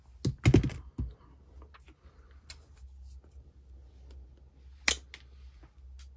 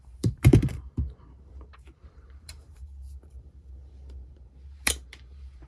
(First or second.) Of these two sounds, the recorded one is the first